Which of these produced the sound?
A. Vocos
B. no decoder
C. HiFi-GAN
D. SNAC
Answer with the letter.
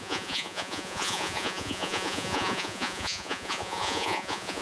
A